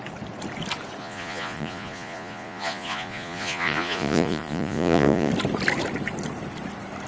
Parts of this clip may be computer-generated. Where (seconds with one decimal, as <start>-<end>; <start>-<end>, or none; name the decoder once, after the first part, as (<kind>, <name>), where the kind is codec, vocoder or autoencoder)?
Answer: 1.0-5.3 (vocoder, Vocos)